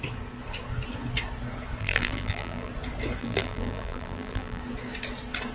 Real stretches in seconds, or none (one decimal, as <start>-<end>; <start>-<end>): 0.0-1.8; 2.7-3.2; 4.6-5.5